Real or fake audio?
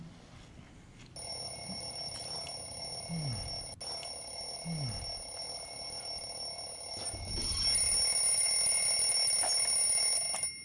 real